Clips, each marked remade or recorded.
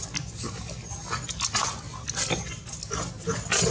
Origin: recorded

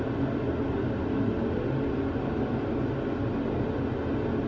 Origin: recorded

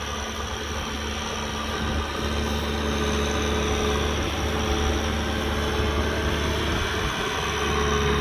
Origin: recorded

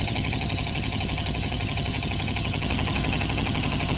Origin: remade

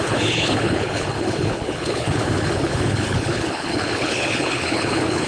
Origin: remade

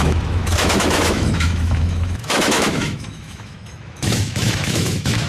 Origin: remade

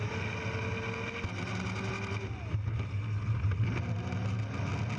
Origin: recorded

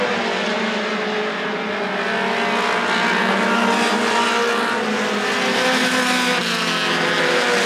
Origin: recorded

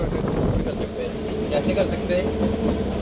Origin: recorded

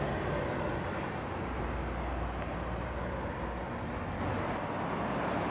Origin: recorded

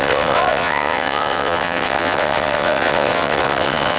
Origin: remade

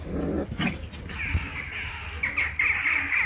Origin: recorded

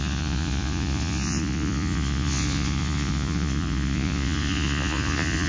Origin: remade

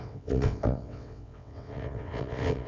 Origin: remade